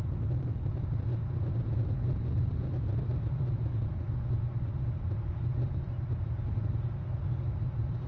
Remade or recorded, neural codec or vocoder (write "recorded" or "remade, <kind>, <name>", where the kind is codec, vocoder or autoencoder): recorded